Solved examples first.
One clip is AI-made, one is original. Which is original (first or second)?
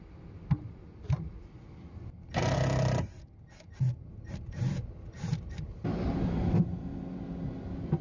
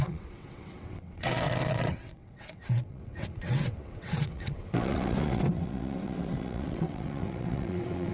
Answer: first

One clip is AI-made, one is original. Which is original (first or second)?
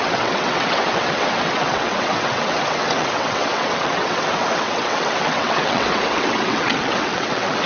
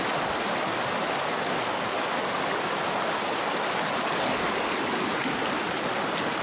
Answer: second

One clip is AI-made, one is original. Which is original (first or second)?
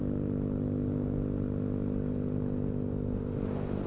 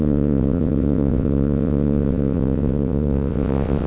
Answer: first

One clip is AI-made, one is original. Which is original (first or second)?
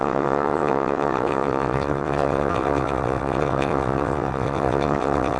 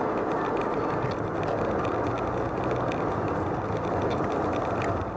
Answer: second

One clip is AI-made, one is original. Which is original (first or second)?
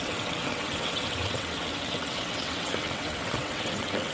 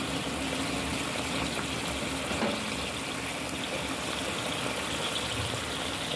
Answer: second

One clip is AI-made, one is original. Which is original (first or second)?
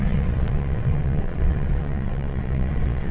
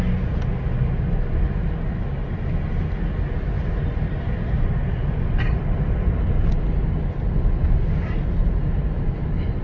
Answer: second